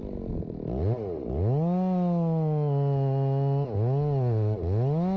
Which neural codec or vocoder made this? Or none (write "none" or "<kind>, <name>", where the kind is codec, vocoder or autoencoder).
none